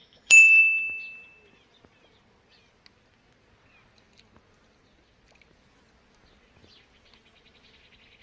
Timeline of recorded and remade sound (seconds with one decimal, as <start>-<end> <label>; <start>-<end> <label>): 0.0-0.6 remade; 0.6-8.2 recorded